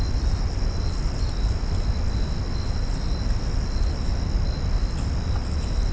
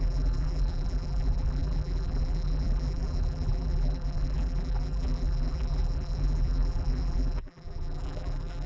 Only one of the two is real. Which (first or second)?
first